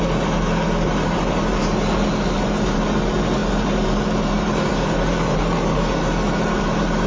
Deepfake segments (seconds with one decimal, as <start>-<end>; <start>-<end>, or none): 0.0-7.1